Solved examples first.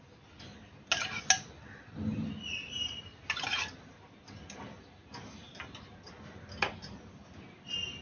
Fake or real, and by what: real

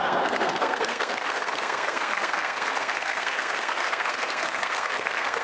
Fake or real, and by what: fake, codec, SNAC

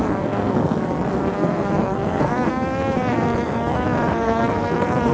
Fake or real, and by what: fake, codec, SNAC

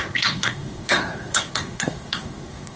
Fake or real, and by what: fake, codec, SNAC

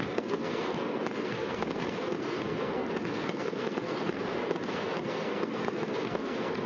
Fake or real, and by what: fake, codec, SNAC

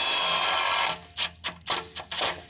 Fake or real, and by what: real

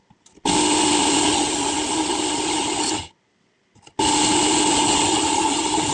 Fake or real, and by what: real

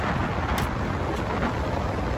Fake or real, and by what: real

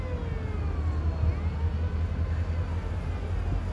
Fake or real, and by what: real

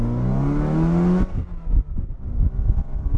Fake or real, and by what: real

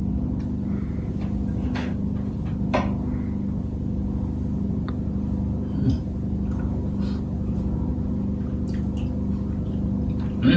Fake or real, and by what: real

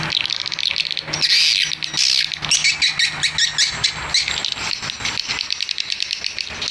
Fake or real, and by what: real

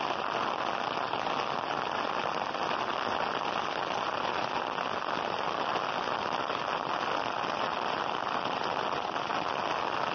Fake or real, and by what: real